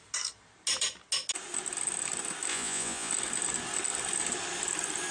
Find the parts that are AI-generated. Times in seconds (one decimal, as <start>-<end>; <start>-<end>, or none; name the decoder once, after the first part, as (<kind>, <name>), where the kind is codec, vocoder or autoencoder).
2.5-3.1 (vocoder, Vocos)